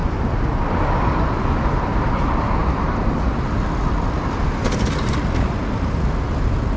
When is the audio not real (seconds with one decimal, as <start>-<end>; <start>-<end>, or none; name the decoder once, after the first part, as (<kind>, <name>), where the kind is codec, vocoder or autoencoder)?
0.0-0.7 (vocoder, BigVGAN v2)

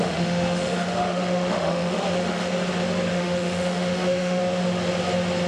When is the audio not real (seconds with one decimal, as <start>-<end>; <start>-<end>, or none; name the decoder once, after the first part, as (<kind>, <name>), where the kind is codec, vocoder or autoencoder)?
0.0-2.5 (autoencoder, DAC-VAE); 3.1-4.4

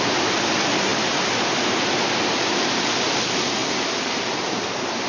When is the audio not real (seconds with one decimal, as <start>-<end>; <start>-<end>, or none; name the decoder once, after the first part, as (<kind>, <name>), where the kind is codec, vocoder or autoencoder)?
none

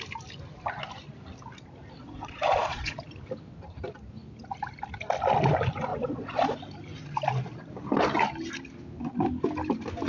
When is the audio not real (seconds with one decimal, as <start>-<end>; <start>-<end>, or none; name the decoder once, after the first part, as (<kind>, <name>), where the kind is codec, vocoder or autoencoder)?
2.0-3.0 (vocoder, Vocos); 5.9-6.6

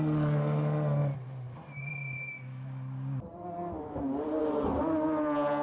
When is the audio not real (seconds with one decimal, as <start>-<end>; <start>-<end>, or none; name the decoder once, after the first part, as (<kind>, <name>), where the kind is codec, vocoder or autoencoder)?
none

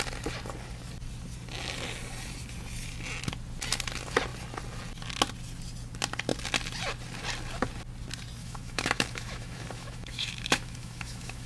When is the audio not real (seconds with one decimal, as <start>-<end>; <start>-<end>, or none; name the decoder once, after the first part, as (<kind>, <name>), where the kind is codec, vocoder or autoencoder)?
8.4-11.5 (autoencoder, DAC-VAE)

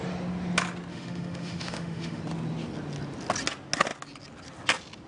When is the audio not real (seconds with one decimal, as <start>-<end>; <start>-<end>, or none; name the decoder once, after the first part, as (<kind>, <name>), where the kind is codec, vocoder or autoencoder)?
0.9-2.2 (autoencoder, DAC-VAE)